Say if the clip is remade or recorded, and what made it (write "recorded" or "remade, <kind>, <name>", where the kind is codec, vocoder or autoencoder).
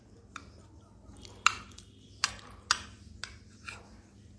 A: recorded